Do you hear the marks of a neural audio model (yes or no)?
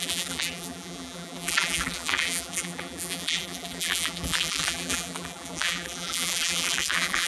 yes